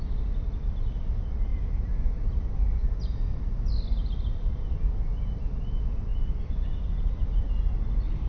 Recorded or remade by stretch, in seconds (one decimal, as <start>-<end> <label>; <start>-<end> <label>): 0.0-1.5 recorded; 1.5-3.0 remade; 3.0-6.1 recorded; 6.1-7.7 remade; 7.7-8.3 recorded